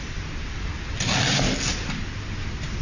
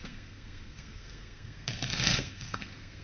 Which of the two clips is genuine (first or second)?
first